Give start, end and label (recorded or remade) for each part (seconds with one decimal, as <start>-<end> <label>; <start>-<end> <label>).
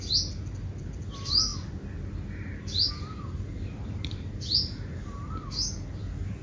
0.0-6.4 recorded